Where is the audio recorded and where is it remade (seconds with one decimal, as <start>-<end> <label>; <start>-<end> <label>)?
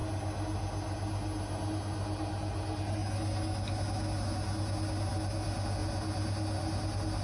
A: 0.0-7.2 recorded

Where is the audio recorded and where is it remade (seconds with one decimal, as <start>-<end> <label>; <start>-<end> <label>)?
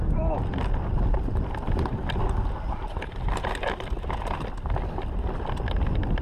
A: 0.0-6.2 recorded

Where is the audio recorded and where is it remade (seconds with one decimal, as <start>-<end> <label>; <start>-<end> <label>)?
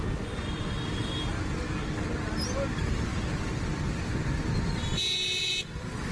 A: 0.0-6.1 recorded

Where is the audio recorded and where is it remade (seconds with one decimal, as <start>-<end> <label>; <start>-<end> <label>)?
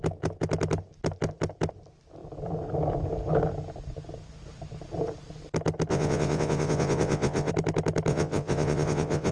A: 0.0-5.9 recorded; 5.9-7.5 remade; 7.5-8.1 recorded; 8.1-9.3 remade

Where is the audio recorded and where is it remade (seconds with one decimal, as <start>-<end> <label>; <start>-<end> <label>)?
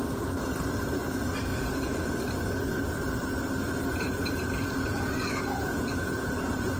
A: 0.0-1.5 recorded; 1.5-2.1 remade; 2.1-3.9 recorded; 3.9-6.8 remade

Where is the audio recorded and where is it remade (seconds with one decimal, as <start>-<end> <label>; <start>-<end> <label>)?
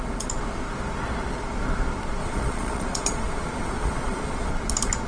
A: 0.0-2.2 recorded; 2.2-4.5 remade; 4.5-5.1 recorded